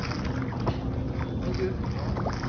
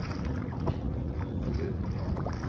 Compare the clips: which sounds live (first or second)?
first